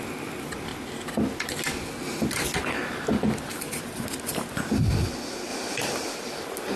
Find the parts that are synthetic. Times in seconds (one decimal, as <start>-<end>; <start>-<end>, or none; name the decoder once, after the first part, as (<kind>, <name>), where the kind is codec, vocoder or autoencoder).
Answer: none